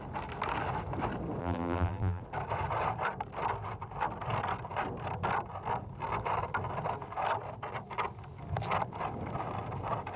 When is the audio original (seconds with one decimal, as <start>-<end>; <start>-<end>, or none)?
0.0-1.4; 2.2-10.2